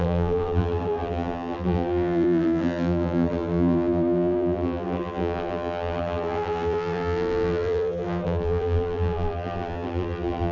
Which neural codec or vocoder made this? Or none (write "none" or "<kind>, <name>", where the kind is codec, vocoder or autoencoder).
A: vocoder, BigVGAN v2